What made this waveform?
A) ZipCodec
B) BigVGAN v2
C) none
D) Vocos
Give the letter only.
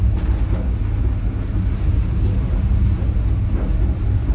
C